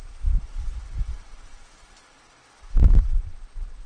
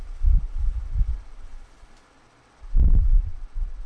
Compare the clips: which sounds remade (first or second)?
first